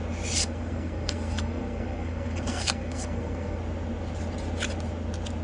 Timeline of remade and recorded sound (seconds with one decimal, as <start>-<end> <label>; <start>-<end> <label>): 0.0-0.4 recorded; 0.4-3.6 remade; 3.6-5.4 recorded